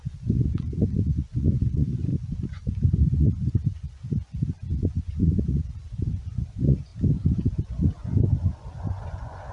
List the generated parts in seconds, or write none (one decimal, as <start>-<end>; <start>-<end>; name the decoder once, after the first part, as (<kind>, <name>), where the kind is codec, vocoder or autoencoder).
0.0-2.1 (vocoder, Vocos); 3.1-6.9; 7.4-9.5